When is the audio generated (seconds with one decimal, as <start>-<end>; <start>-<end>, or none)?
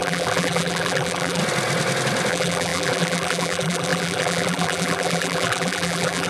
0.0-1.4; 2.3-6.3